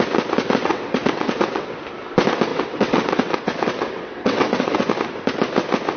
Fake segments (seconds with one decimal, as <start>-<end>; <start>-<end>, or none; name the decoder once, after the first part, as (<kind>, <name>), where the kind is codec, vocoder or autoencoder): 0.6-1.8 (vocoder, WaveNeXt); 2.5-4.9